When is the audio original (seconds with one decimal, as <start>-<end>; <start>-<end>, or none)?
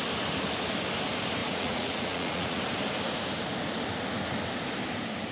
0.0-1.4; 2.6-5.3